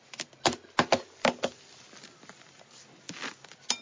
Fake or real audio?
real